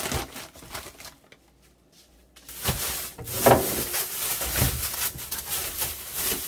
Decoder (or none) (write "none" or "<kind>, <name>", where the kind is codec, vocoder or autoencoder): none